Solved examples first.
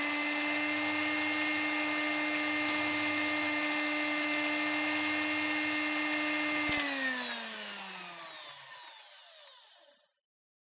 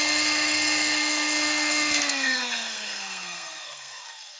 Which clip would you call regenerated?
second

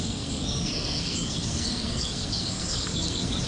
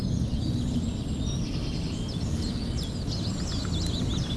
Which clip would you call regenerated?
first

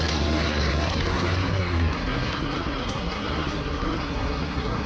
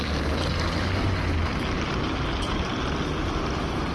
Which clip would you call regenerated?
first